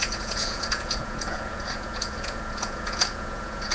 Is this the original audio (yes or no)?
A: no